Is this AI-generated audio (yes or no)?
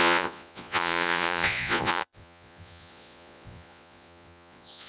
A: yes